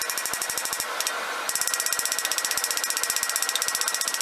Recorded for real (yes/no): yes